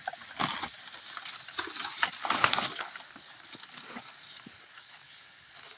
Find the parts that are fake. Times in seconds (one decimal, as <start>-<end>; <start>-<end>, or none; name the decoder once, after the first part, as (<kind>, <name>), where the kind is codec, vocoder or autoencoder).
2.2-5.8 (codec, DAC)